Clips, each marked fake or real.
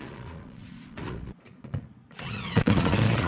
fake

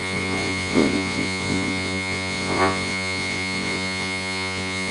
fake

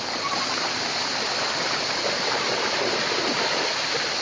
real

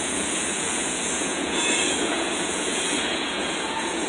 fake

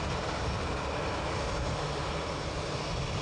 real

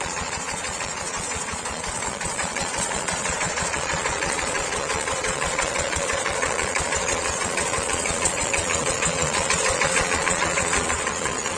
fake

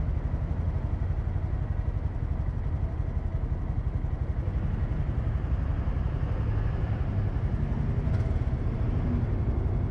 real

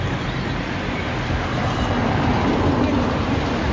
real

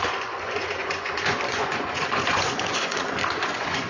fake